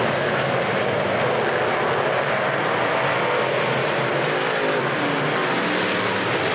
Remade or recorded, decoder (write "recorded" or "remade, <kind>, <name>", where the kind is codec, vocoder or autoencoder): recorded